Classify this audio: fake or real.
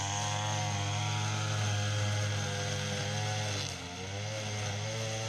real